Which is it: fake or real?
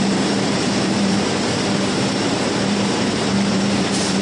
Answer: fake